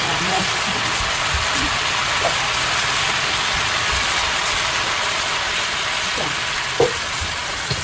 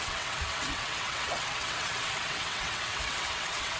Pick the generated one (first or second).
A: second